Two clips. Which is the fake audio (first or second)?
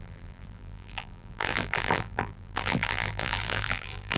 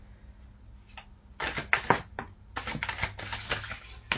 first